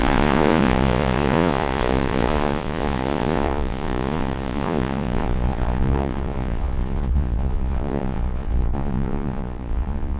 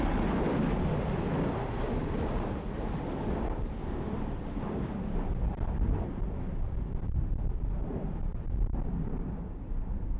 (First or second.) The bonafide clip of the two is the second